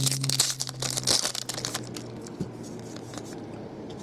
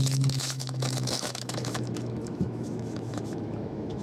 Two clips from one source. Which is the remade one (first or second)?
second